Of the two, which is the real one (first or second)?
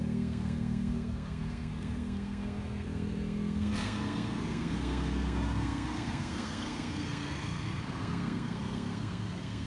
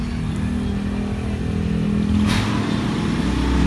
second